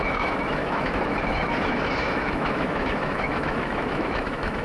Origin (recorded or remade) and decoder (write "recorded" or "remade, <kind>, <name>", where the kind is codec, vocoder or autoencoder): remade, autoencoder, DAC-VAE